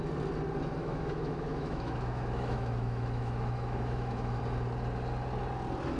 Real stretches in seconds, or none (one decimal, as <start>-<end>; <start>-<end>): 0.0-0.8; 4.4-6.0